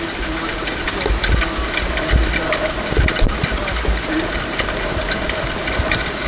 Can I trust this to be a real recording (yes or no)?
yes